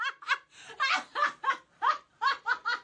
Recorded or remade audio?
recorded